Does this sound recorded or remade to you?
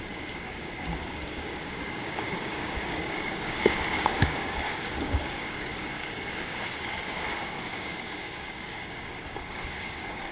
remade